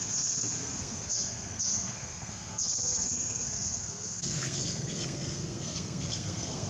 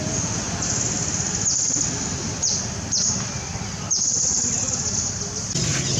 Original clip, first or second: second